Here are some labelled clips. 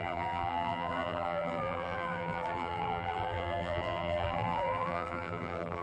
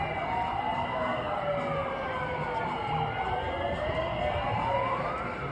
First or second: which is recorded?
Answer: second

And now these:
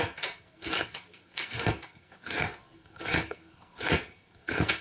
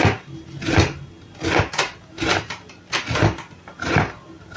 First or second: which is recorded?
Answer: second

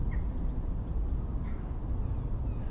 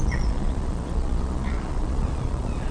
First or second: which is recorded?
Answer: first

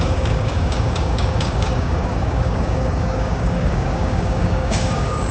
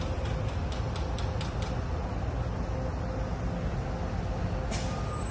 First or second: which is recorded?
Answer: second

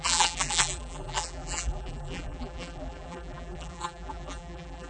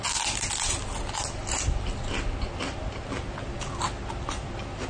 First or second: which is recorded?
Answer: second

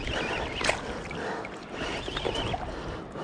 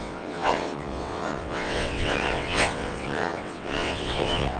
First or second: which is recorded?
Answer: first